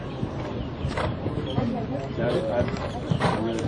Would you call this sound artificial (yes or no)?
no